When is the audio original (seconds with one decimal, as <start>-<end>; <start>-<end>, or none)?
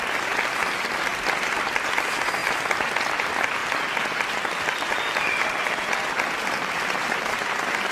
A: 0.0-1.1; 1.9-3.6; 7.5-7.9